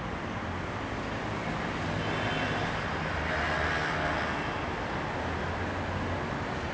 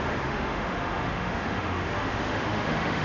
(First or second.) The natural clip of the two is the first